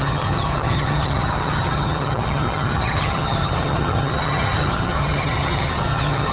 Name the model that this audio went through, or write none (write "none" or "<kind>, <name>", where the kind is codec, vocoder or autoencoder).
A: vocoder, HiFi-GAN